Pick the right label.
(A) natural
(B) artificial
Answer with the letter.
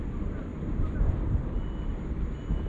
A